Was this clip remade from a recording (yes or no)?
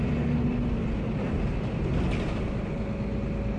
no